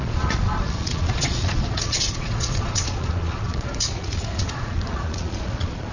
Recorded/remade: remade